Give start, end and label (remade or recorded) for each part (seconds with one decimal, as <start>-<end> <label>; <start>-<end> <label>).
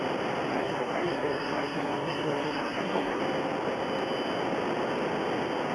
0.0-0.5 recorded; 0.5-3.2 remade; 3.2-5.7 recorded